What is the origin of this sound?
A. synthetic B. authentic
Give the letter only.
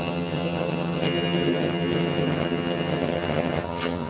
A